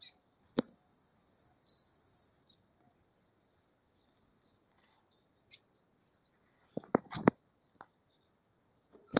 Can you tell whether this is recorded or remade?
recorded